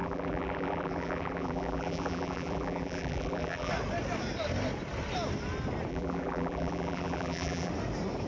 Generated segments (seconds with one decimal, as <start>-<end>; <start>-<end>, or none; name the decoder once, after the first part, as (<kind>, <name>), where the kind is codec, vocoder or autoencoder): 0.0-3.7 (vocoder, BigVGAN v2); 5.9-7.7